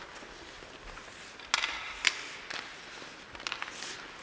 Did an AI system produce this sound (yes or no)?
no